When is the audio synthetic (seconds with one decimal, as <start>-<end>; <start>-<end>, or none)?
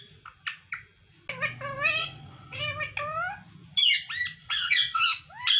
2.0-2.6; 4.4-5.0